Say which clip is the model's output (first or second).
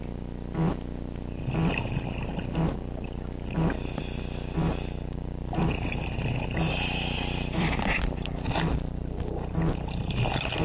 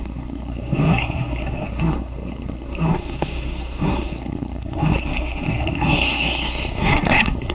second